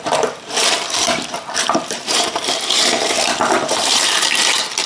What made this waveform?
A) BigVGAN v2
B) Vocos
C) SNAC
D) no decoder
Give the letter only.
A